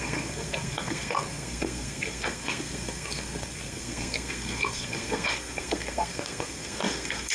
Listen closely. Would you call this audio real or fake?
fake